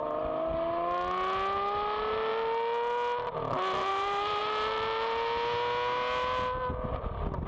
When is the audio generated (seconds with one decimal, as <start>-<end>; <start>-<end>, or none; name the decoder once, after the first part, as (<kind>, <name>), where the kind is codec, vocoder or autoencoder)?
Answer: 3.9-4.4 (vocoder, BigVGAN v2)